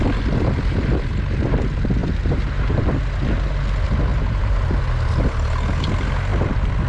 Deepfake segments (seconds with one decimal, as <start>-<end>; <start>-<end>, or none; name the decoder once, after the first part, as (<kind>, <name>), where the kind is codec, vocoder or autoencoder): 2.0-2.8 (vocoder, BigVGAN v2); 4.1-4.8